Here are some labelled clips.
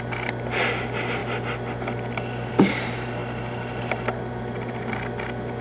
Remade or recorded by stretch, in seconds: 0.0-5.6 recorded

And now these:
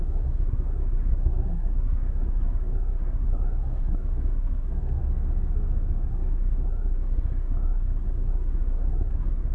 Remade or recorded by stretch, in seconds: 0.0-5.0 remade; 5.0-6.1 recorded; 6.1-9.5 remade

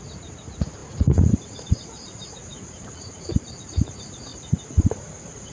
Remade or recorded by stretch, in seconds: 0.0-3.3 remade; 3.3-3.9 recorded; 3.9-4.3 remade; 4.3-4.9 recorded; 4.9-5.5 remade